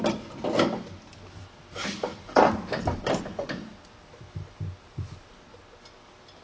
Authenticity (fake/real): real